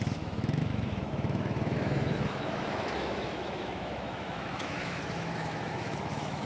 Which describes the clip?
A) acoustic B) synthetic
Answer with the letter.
B